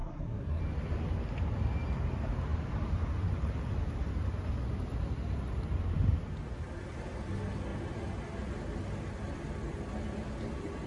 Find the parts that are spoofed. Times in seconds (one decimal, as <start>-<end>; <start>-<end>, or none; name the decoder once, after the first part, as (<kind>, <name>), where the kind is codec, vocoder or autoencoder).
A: 0.0-0.6 (codec, SNAC)